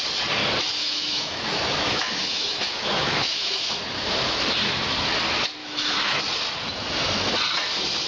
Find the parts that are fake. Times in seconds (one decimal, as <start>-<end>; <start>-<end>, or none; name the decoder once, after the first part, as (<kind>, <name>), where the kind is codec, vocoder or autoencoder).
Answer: 0.8-3.6 (autoencoder, DAC-VAE); 5.6-6.2